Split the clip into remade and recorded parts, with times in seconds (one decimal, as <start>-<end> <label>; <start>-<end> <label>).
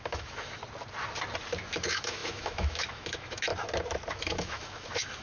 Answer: 0.0-0.6 remade; 0.6-1.7 recorded; 1.7-3.5 remade; 3.5-4.1 recorded; 4.1-5.2 remade